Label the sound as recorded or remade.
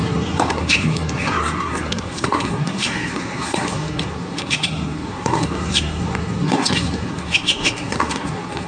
remade